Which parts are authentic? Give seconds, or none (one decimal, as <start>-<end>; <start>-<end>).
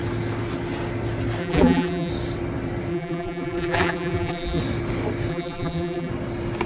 0.0-1.4; 2.1-2.9; 4.6-5.3; 6.1-6.7